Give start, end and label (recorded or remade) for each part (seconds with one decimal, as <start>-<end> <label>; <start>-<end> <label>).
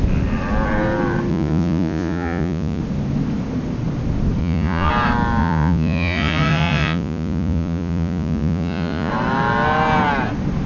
0.0-1.3 recorded; 1.3-2.8 remade; 2.8-4.4 recorded; 4.4-4.9 remade; 4.9-5.4 recorded; 5.4-9.1 remade; 9.1-10.7 recorded